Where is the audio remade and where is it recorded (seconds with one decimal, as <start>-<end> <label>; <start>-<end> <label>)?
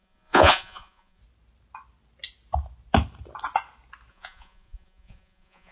0.0-1.2 remade; 1.2-4.1 recorded; 4.1-5.7 remade